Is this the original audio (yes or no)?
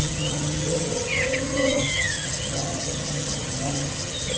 no